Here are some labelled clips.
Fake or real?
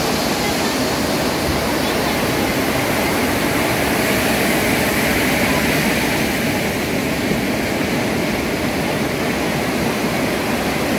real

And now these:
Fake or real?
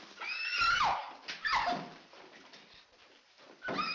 real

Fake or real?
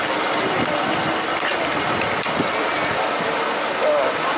real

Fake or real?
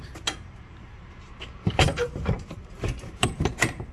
fake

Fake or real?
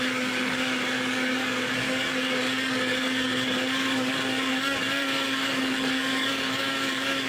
fake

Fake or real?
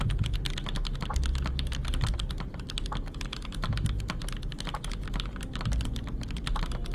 real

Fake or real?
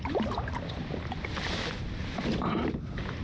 real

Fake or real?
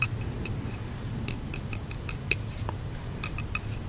real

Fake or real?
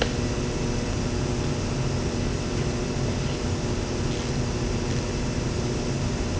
real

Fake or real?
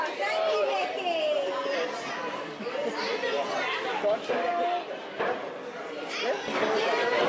real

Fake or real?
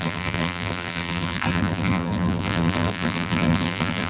fake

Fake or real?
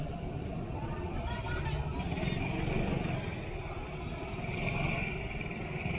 real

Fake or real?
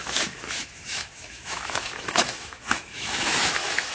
fake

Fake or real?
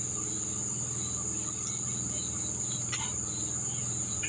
real